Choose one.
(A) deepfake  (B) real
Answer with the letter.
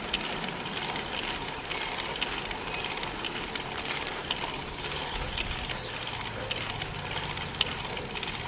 B